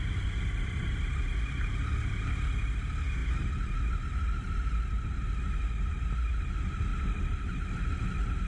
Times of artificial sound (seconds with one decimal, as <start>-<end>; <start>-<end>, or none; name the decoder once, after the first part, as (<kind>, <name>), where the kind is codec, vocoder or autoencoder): 6.9-7.5 (vocoder, BigVGAN v2)